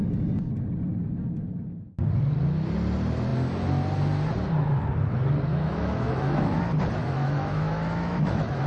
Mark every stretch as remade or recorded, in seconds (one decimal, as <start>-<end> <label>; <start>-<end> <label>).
0.0-5.5 recorded; 5.5-6.6 remade; 6.6-7.0 recorded; 7.0-8.7 remade